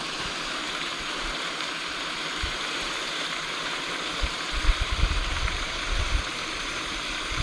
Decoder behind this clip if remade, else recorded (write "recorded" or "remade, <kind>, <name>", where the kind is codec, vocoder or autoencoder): remade, vocoder, BigVGAN v2